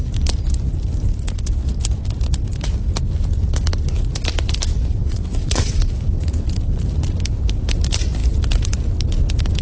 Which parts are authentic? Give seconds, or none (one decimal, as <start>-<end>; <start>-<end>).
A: 0.0-4.9; 5.8-9.6